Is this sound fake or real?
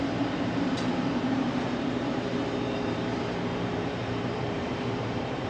fake